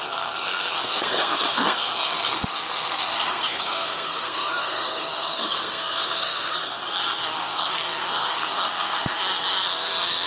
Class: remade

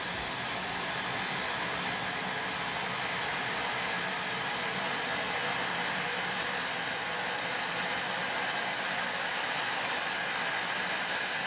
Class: recorded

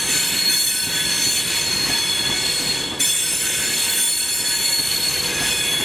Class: recorded